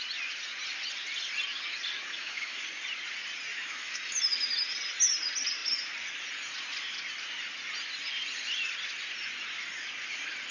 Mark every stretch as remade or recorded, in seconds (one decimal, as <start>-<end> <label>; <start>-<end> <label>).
0.0-2.0 recorded; 2.0-2.6 remade; 2.6-3.5 recorded; 3.5-4.2 remade; 4.2-10.5 recorded